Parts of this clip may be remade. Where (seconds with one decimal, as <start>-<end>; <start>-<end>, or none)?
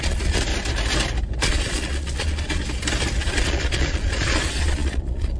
0.0-0.5; 1.4-2.6; 3.2-5.4